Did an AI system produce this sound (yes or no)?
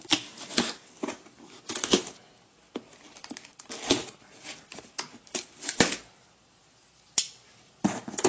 no